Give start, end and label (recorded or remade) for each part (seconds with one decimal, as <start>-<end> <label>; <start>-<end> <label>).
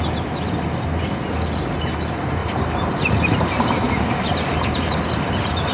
0.0-2.4 recorded; 2.4-5.3 remade; 5.3-5.7 recorded